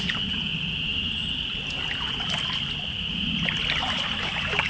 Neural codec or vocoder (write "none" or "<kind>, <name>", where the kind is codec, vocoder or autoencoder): none